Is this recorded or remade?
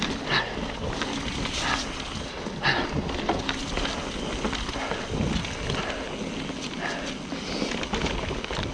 recorded